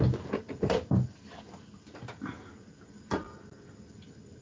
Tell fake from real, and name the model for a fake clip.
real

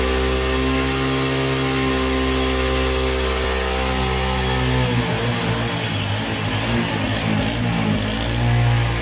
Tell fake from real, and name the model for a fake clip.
real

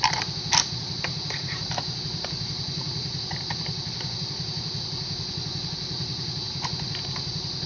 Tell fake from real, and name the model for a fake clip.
real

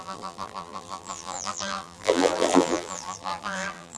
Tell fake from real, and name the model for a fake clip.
fake, vocoder, BigVGAN v2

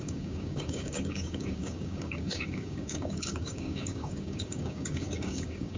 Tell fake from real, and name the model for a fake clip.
fake, codec, DAC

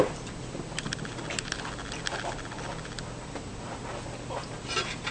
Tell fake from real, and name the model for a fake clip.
real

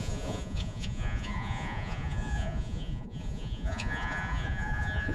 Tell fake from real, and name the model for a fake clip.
fake, vocoder, Vocos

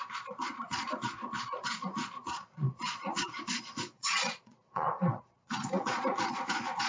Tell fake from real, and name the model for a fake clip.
fake, vocoder, Vocos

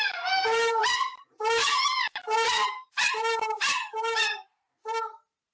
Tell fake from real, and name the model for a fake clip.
fake, vocoder, BigVGAN v2